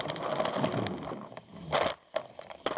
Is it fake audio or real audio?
real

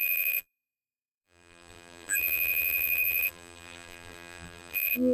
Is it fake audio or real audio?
fake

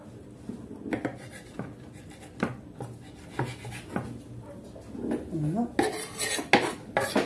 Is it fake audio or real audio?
real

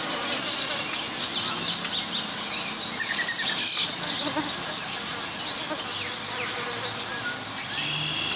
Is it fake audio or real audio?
real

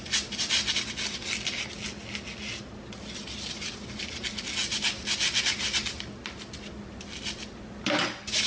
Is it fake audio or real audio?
real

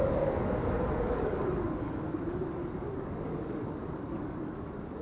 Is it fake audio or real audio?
fake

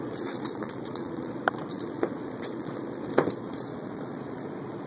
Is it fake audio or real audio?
fake